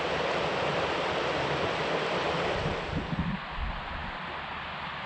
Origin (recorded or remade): recorded